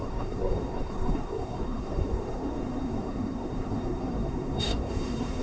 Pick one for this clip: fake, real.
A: fake